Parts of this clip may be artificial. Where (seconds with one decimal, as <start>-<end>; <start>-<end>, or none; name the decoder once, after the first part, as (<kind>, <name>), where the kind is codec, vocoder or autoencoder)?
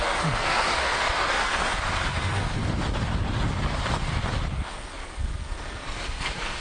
0.0-1.6 (codec, SNAC); 2.1-2.6; 4.7-6.6